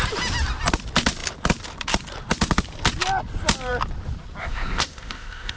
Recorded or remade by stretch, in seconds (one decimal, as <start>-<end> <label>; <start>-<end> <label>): 0.0-4.4 recorded; 4.4-5.6 remade

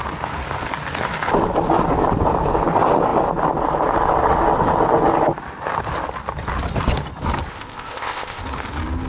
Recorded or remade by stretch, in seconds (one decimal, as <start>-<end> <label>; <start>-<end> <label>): 0.0-7.5 recorded; 7.5-8.4 remade; 8.4-9.1 recorded